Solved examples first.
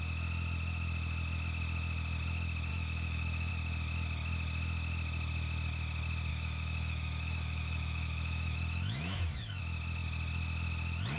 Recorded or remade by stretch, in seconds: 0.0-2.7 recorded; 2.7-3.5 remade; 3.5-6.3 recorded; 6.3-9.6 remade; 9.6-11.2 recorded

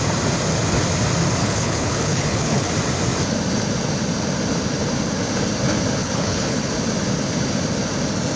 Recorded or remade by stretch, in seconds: 0.0-1.4 recorded; 1.4-2.7 remade; 2.7-6.0 recorded; 6.0-6.7 remade; 6.7-8.4 recorded

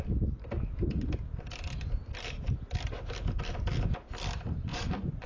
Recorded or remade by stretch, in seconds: 0.0-4.7 recorded; 4.7-5.3 remade

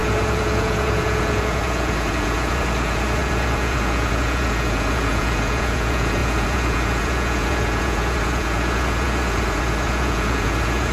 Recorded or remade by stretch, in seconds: 0.0-10.9 remade

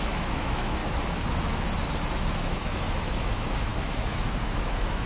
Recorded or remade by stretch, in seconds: 0.0-0.8 remade; 0.8-2.1 recorded; 2.1-5.1 remade

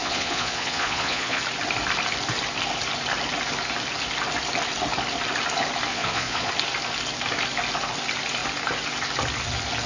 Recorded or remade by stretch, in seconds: 0.0-1.4 remade; 1.4-5.9 recorded; 5.9-6.5 remade; 6.5-9.9 recorded